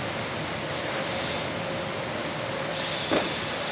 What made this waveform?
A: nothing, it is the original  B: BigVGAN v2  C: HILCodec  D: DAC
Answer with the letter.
A